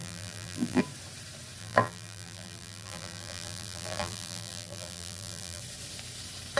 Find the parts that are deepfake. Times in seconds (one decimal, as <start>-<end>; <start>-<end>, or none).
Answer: 0.0-0.8; 1.6-5.6